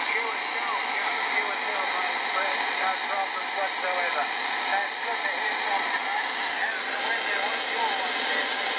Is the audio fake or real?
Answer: real